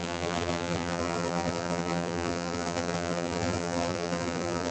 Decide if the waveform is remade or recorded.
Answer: remade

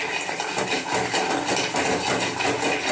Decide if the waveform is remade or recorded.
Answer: recorded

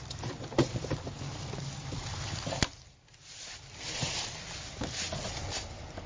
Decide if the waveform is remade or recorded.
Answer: recorded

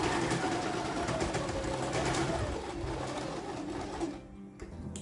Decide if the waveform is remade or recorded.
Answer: recorded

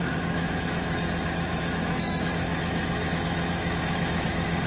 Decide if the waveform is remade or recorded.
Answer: remade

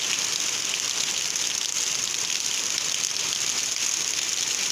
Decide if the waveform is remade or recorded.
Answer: recorded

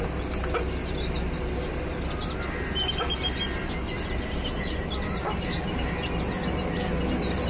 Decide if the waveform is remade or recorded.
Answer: recorded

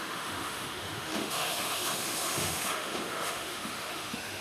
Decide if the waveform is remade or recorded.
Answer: remade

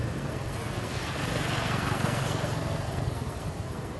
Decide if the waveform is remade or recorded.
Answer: remade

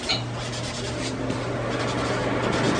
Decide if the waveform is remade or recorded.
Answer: recorded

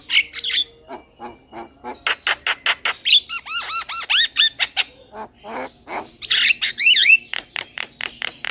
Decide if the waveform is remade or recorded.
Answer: recorded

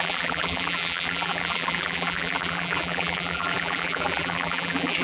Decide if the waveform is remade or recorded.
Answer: remade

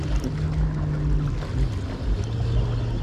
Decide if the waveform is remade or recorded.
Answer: recorded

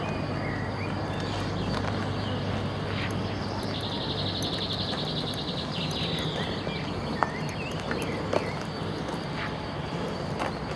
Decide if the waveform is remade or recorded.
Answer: recorded